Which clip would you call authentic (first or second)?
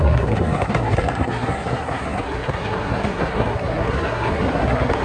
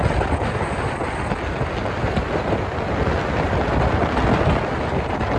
second